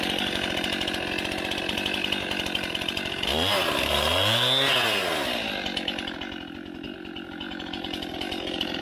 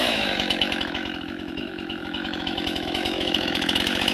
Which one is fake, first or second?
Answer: second